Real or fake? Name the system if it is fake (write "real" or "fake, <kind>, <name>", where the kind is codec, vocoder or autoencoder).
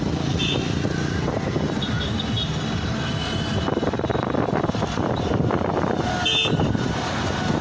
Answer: real